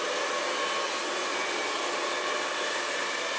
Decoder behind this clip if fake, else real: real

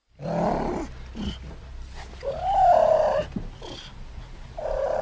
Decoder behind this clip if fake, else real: real